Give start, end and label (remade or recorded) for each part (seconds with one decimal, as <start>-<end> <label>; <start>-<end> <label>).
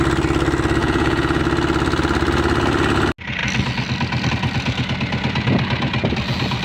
0.0-0.8 recorded; 0.8-1.4 remade; 1.4-6.6 recorded